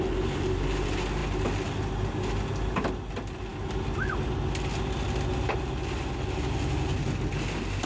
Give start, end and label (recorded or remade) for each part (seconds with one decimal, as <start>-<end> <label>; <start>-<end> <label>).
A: 0.0-7.9 recorded